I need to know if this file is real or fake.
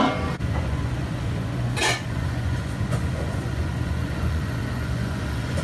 fake